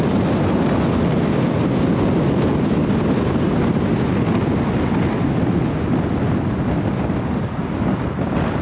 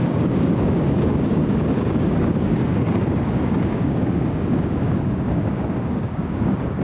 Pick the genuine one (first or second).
first